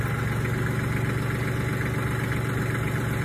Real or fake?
real